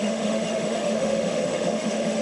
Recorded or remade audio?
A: remade